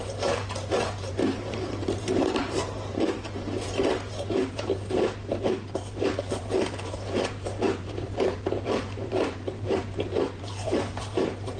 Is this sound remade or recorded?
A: remade